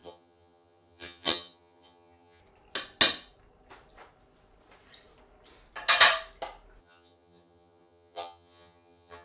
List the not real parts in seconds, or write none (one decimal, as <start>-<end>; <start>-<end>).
0.0-2.4; 6.8-9.2